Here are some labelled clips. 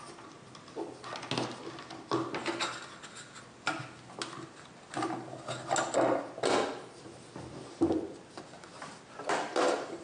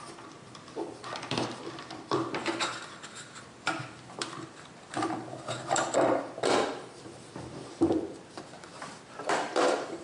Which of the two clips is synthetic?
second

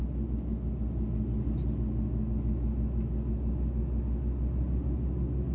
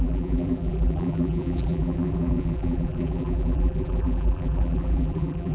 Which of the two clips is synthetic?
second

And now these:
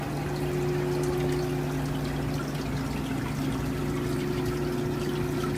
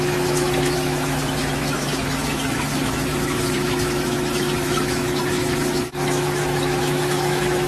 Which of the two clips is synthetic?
second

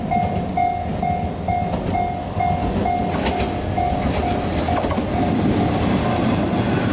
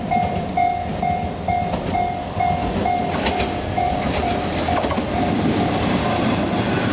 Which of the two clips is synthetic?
second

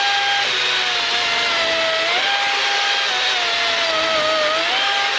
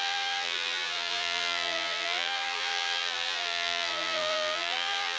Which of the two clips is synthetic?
second